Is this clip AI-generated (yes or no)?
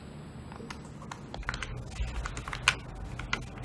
no